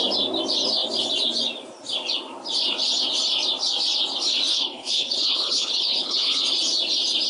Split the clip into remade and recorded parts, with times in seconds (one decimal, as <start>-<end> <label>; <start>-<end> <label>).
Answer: 0.0-4.5 recorded; 4.5-6.4 remade; 6.4-7.3 recorded